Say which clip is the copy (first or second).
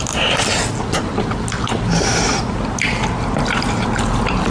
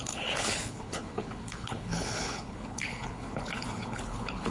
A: second